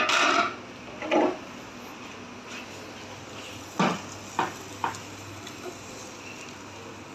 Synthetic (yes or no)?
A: no